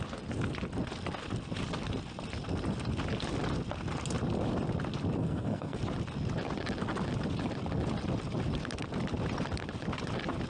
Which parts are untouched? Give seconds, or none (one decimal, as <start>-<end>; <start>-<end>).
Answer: 0.0-5.2; 5.8-10.5

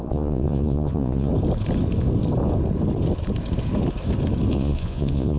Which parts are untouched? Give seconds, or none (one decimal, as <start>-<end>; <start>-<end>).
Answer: 1.3-4.5

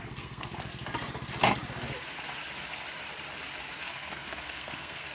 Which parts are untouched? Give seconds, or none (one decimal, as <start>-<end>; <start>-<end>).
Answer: 0.7-3.8

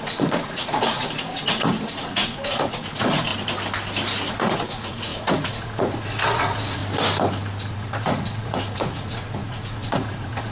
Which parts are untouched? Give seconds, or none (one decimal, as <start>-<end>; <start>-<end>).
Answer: 3.3-4.3; 6.8-7.7